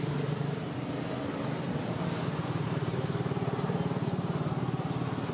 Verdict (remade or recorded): recorded